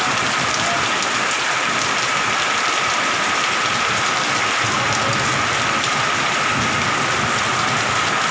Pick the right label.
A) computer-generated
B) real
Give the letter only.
B